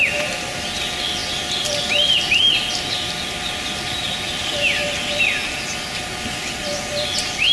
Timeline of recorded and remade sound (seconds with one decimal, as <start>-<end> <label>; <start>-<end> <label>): 0.0-7.5 recorded